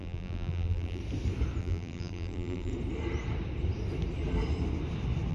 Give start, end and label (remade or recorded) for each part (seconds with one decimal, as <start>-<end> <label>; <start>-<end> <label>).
0.0-1.0 remade; 1.0-1.6 recorded; 1.6-2.7 remade; 2.7-5.3 recorded